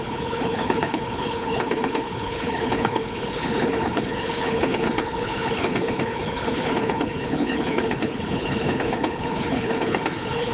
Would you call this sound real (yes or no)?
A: no